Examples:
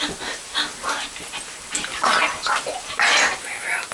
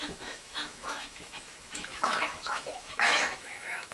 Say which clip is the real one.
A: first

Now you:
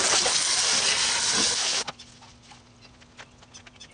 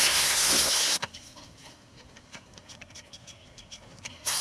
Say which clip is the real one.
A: first